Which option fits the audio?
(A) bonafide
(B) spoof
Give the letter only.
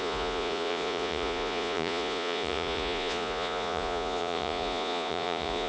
B